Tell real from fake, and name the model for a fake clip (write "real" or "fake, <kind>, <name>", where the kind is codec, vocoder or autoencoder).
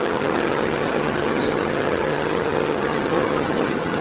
fake, vocoder, HiFi-GAN